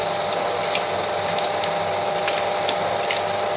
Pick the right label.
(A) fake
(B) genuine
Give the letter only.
B